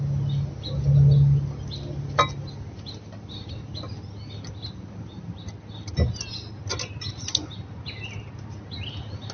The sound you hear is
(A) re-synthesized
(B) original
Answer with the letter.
B